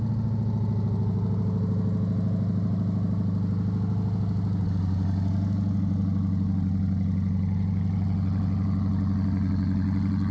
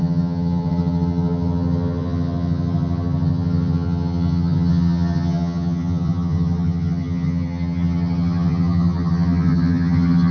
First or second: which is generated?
second